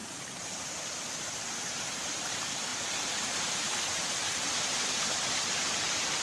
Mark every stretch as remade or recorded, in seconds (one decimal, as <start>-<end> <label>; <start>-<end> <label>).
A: 0.0-6.2 remade